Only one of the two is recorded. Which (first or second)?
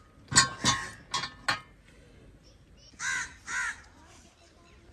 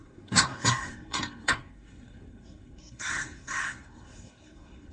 first